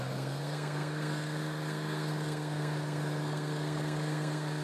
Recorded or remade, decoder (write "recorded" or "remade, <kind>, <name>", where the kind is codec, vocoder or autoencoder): remade, codec, SNAC